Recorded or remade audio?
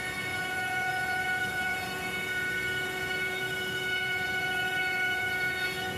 remade